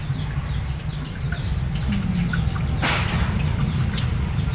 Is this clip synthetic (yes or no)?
no